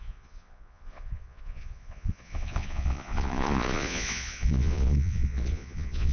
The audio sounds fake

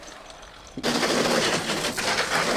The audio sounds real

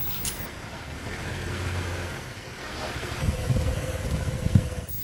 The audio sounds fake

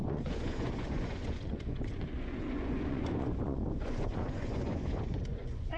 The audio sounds fake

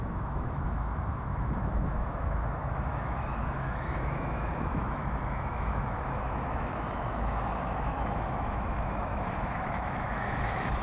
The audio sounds fake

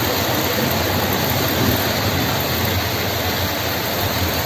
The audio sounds real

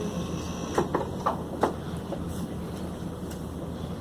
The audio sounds real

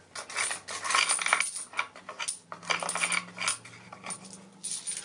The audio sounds real